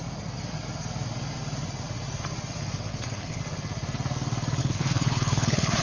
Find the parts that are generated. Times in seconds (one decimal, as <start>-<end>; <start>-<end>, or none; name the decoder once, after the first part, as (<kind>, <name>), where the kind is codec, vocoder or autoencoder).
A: 2.9-3.4 (codec, HILCodec); 4.6-5.8